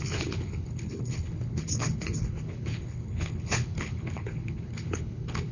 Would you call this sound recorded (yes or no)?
no